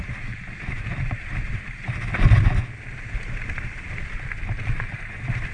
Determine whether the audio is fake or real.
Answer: real